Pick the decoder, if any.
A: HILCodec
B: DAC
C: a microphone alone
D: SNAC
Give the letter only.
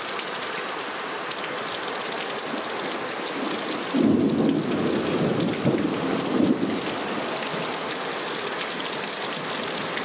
C